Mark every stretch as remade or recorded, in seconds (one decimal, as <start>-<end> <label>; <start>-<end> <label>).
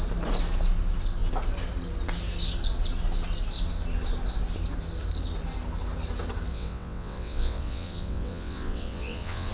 0.0-6.5 recorded; 6.5-9.5 remade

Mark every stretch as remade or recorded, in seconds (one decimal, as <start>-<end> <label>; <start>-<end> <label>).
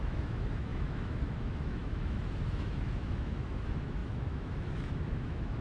0.0-5.6 remade